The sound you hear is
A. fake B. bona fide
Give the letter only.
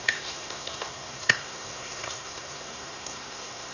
A